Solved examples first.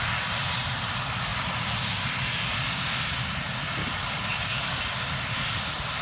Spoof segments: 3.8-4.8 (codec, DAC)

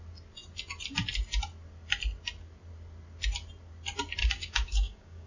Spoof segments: 4.2-5.3 (codec, DAC)